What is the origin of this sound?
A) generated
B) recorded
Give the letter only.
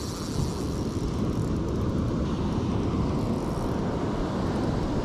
B